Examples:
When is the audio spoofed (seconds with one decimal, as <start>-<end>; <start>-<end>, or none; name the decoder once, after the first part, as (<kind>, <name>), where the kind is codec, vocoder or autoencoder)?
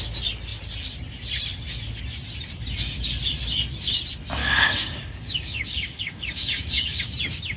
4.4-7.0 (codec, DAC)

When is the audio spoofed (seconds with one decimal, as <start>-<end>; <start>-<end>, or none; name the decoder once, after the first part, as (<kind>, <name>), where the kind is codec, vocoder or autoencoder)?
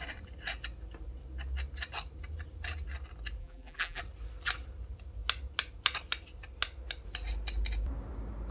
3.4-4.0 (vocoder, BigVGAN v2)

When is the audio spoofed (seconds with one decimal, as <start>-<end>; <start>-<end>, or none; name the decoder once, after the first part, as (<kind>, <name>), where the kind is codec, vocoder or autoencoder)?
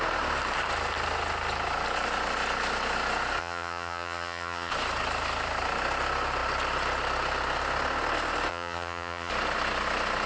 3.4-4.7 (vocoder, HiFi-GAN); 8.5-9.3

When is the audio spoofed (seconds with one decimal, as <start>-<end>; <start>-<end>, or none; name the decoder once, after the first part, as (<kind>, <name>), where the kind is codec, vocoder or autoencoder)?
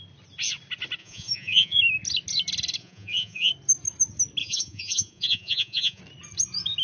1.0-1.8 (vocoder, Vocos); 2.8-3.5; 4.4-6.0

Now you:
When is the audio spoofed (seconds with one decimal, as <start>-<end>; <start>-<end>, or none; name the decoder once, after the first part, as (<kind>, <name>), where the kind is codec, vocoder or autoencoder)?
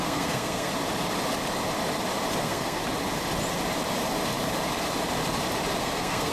0.0-0.7 (codec, SNAC); 2.4-2.8; 5.8-6.3